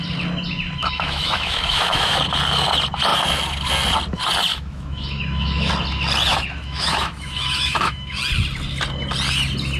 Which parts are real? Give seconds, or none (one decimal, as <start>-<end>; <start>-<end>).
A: 0.0-0.8; 2.2-4.5; 5.7-6.3; 8.2-9.8